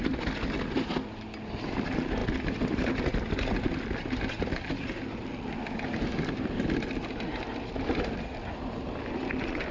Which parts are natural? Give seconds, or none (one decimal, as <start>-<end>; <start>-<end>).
0.0-9.7